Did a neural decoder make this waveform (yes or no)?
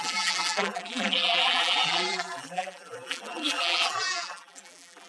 yes